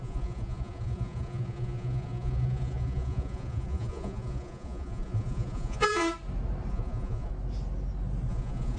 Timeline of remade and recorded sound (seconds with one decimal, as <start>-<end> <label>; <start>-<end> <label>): 0.0-6.0 remade; 6.0-6.7 recorded; 6.7-7.3 remade; 7.3-8.3 recorded; 8.3-8.8 remade

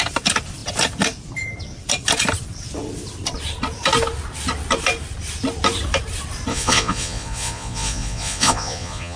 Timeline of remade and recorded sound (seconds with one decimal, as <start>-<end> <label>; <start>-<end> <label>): 0.0-6.5 recorded; 6.5-9.2 remade

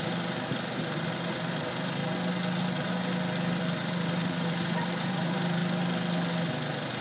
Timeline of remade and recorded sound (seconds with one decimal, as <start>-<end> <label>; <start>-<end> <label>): 0.0-2.0 remade; 2.0-3.6 recorded; 3.6-5.6 remade; 5.6-6.5 recorded; 6.5-7.0 remade

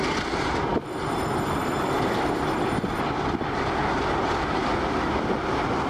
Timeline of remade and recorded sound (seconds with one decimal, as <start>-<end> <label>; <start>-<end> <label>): 0.0-5.9 recorded

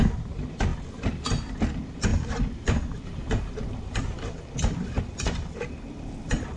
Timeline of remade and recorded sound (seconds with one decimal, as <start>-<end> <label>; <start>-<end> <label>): 0.0-6.6 recorded

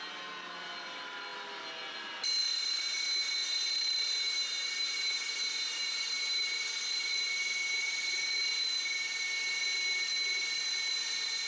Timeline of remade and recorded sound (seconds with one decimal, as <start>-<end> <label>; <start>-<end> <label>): 0.0-3.4 recorded; 3.4-7.4 remade; 7.4-9.7 recorded; 9.7-10.4 remade; 10.4-11.5 recorded

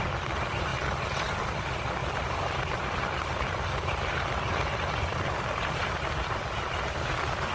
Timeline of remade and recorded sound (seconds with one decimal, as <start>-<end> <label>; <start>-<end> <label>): 0.0-0.7 recorded; 0.7-1.6 remade; 1.6-2.0 recorded; 2.0-6.5 remade; 6.5-7.5 recorded

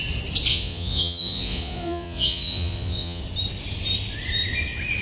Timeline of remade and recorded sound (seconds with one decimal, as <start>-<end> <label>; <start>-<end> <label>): 0.0-0.5 recorded; 0.5-3.2 remade; 3.2-5.0 recorded